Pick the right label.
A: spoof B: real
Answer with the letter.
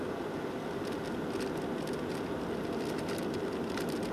B